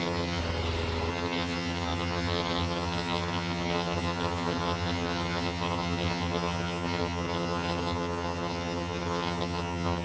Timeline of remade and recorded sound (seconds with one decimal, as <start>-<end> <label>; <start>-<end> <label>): 0.0-0.4 remade; 0.4-1.1 recorded; 1.1-10.0 remade